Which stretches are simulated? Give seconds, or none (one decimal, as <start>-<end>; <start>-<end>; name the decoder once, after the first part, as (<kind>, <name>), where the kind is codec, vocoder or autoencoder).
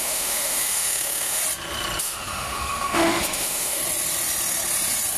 0.0-1.4 (autoencoder, DAC-VAE); 2.0-3.8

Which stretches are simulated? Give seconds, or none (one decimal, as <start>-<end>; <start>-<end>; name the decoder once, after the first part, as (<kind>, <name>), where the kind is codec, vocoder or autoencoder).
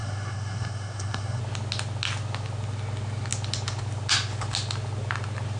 0.0-1.4 (codec, SNAC)